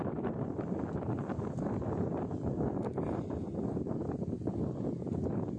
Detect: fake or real real